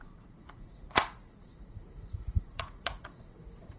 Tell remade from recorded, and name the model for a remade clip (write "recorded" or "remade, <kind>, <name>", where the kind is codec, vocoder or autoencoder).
remade, vocoder, Vocos